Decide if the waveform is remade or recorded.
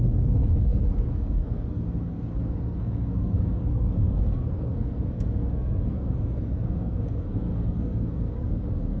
remade